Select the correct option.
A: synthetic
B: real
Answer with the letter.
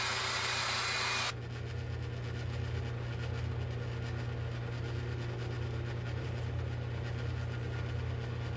B